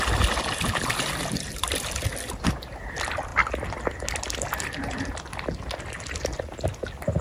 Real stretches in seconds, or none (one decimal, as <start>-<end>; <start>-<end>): 0.0-7.2